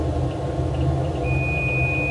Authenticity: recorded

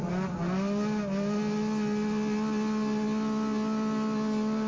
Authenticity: recorded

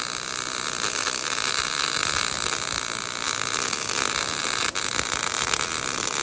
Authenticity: recorded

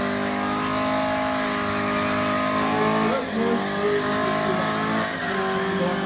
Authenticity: recorded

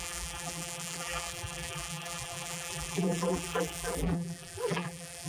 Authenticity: remade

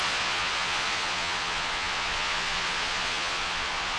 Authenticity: remade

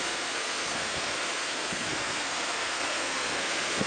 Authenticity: remade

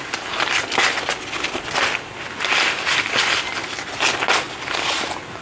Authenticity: recorded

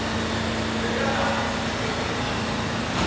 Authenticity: recorded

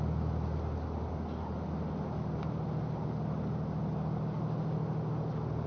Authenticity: recorded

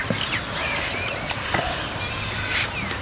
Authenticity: recorded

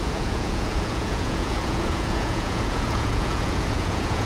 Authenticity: remade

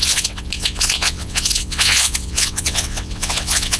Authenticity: remade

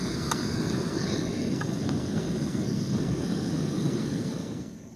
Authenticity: remade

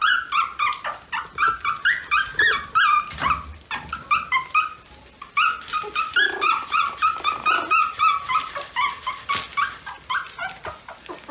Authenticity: recorded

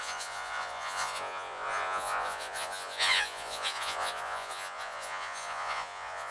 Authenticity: remade